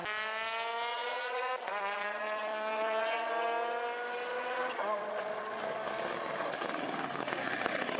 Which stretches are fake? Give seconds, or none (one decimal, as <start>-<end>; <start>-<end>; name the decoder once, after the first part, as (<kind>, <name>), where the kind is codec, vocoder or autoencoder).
0.9-3.3 (vocoder, Vocos); 4.3-5.6